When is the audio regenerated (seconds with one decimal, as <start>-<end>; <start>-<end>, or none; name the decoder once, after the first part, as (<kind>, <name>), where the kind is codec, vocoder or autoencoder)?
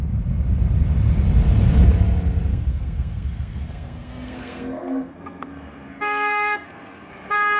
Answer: 2.5-7.1 (codec, SNAC)